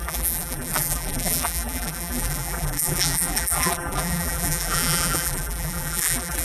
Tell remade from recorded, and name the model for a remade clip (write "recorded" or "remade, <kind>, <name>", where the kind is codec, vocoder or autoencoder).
remade, vocoder, BigVGAN v2